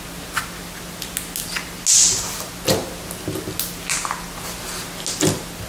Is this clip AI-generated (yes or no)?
no